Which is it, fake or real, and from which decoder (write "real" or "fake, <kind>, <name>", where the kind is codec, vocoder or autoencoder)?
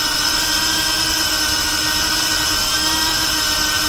real